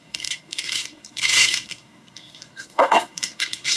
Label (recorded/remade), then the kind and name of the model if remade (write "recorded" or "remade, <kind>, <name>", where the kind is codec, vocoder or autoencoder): remade, codec, SNAC